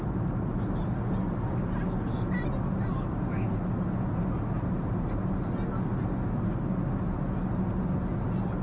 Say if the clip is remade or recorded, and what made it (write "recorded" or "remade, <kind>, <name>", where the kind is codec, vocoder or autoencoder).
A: recorded